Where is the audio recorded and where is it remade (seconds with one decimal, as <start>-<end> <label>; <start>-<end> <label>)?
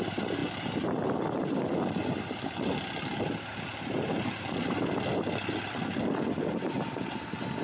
0.0-7.6 recorded